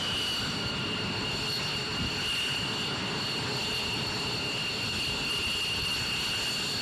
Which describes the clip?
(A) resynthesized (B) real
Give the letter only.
B